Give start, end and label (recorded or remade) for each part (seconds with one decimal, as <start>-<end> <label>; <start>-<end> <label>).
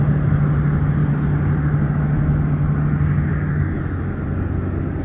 0.0-3.3 recorded; 3.3-4.0 remade; 4.0-5.0 recorded